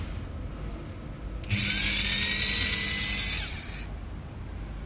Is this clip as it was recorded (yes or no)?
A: yes